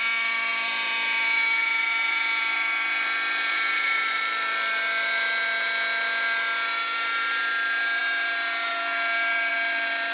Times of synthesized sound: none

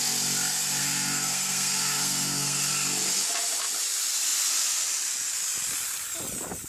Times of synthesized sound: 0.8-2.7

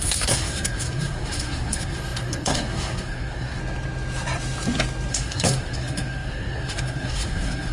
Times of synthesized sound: 0.0-3.6; 5.1-7.7

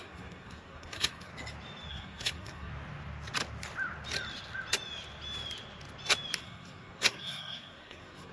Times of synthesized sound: 0.0-1.3; 1.9-2.7; 6.4-8.3

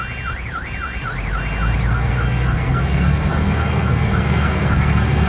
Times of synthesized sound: 1.9-5.3

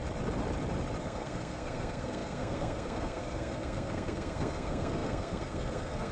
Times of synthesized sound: 1.0-6.1